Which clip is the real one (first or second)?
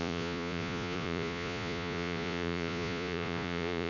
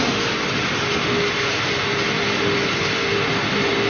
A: second